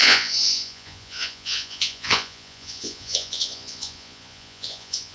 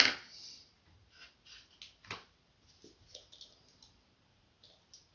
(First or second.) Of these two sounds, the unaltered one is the second